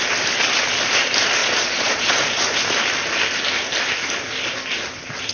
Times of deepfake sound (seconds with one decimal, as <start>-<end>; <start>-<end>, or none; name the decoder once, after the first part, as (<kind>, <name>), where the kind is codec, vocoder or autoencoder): 1.4-2.4 (vocoder, Vocos)